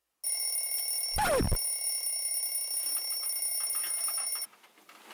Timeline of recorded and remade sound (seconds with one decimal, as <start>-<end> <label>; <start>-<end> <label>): 0.0-5.1 recorded